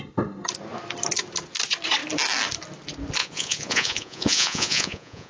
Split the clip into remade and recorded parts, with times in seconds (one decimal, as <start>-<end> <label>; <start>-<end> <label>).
0.0-3.2 recorded; 3.2-5.3 remade